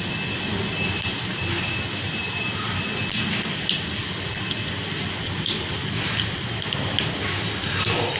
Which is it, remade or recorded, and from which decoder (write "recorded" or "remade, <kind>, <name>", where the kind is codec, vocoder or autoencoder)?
recorded